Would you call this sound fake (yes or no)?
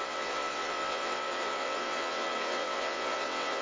yes